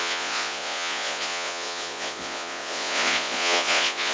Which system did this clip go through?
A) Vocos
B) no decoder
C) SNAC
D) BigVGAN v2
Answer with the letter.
A